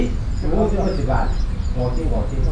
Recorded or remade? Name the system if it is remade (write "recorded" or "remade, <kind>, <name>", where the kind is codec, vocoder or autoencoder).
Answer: recorded